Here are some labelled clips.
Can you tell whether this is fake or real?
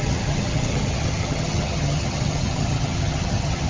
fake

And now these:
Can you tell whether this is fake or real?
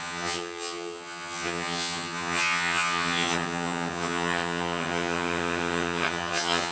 fake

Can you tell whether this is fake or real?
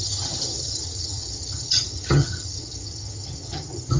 fake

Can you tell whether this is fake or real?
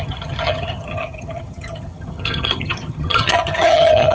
fake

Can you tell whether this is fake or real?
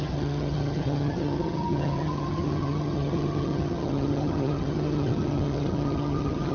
fake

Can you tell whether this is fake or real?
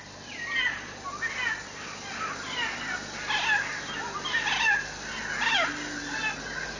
real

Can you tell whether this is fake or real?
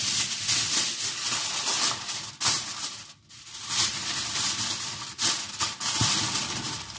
real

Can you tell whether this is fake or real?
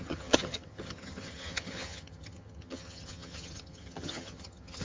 fake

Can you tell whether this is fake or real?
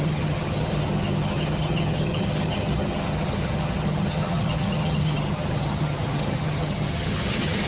fake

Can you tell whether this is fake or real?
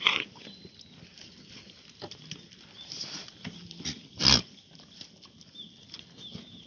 real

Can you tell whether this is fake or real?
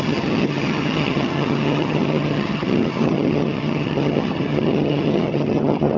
fake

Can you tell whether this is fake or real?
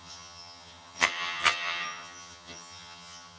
fake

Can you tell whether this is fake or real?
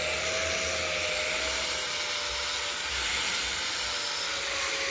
real